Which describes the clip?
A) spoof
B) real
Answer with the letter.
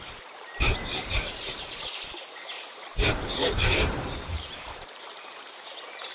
A